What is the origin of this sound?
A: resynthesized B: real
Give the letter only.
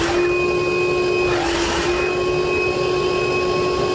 B